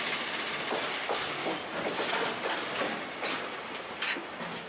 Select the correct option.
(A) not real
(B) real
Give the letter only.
B